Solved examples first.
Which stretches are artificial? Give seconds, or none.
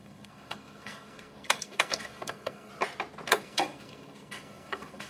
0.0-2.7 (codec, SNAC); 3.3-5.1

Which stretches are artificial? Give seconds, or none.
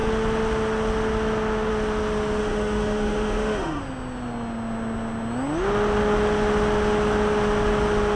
2.4-3.8 (autoencoder, DAC-VAE)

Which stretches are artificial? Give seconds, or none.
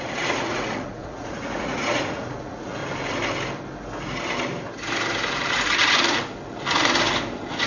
0.0-2.8 (vocoder, Vocos)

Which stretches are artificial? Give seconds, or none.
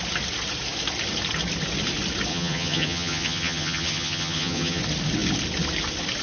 2.3-4.8 (vocoder, HiFi-GAN)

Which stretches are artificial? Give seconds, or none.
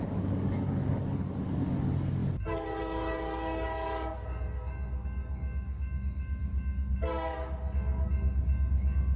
0.0-9.2 (codec, DAC)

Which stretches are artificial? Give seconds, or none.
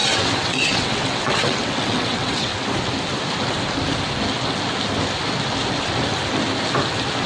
0.0-2.5 (vocoder, WaveNeXt)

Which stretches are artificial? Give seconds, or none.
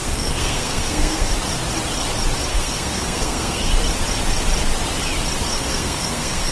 0.0-1.3 (codec, SNAC); 2.5-3.7; 5.5-6.5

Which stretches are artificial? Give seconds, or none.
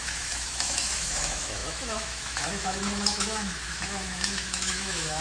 0.0-5.2 (autoencoder, DAC-VAE)